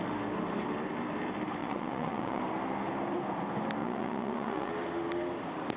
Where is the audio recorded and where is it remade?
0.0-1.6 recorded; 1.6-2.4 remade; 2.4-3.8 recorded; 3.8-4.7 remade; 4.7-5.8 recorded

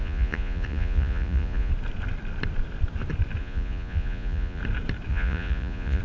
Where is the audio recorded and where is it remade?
0.0-1.7 remade; 1.7-3.4 recorded; 3.4-4.6 remade; 4.6-5.1 recorded; 5.1-6.0 remade

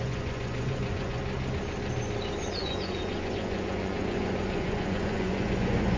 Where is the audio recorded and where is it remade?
0.0-1.2 remade; 1.2-2.5 recorded; 2.5-6.0 remade

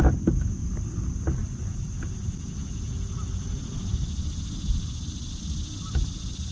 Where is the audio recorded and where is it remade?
0.0-6.5 recorded

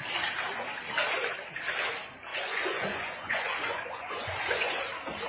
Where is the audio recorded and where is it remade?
0.0-2.3 recorded; 2.3-4.8 remade; 4.8-5.3 recorded

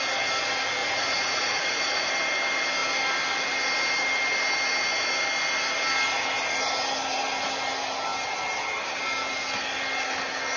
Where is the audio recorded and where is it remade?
0.0-0.8 recorded; 0.8-2.1 remade; 2.1-10.6 recorded